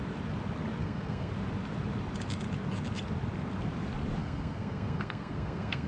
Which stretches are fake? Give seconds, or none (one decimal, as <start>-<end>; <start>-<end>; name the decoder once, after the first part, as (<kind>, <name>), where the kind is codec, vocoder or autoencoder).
0.8-1.3 (codec, SNAC); 4.2-5.9